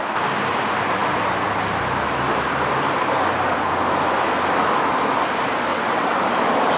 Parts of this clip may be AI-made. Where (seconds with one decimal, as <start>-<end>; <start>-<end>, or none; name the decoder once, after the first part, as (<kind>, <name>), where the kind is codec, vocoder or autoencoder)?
5.7-6.2 (vocoder, WaveNeXt)